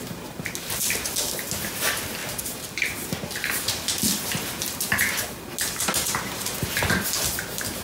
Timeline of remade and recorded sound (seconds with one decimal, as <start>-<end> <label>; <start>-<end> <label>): 0.0-7.8 recorded